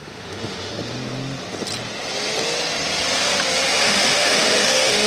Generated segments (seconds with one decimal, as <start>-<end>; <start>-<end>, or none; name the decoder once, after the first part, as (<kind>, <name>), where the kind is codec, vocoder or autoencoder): 0.0-0.7 (autoencoder, DAC-VAE); 3.8-5.1